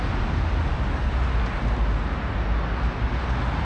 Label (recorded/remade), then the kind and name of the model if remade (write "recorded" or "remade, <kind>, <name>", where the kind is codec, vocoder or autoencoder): recorded